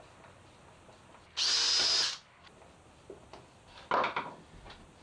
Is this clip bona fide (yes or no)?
yes